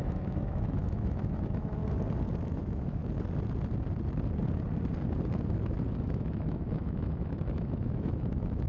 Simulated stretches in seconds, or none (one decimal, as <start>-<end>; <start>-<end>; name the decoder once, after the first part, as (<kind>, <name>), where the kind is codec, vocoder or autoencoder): 0.0-1.8 (autoencoder, DAC-VAE); 2.5-3.0; 6.0-8.7